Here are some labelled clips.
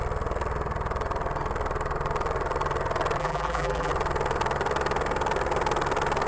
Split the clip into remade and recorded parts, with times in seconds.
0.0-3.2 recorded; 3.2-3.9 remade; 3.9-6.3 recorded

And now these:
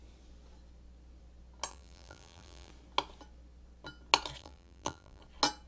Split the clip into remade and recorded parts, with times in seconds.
0.0-1.7 recorded; 1.7-2.7 remade; 2.7-4.4 recorded; 4.4-5.2 remade; 5.2-5.7 recorded

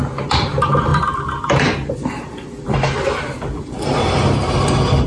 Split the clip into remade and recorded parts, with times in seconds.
0.0-0.9 recorded; 0.9-4.0 remade; 4.0-5.1 recorded